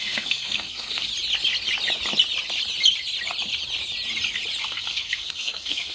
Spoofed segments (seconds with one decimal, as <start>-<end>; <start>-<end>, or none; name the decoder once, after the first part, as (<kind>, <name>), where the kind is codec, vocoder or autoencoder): 0.0-1.1 (codec, SNAC); 4.6-5.9

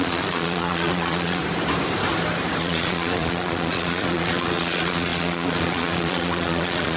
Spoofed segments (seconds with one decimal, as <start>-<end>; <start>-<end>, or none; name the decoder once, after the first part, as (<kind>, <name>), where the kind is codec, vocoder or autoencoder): 0.0-1.4 (vocoder, Vocos); 2.6-7.0

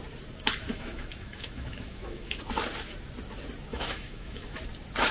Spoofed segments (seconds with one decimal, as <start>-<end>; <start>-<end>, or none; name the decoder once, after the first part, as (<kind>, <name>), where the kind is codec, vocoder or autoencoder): 0.7-2.4 (autoencoder, DAC-VAE); 3.7-4.6